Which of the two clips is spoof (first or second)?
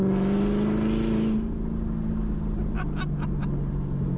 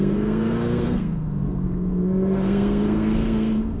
second